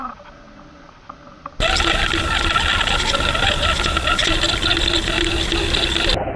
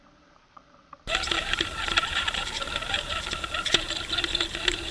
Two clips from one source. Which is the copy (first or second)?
second